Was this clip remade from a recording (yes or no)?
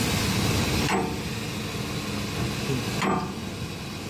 no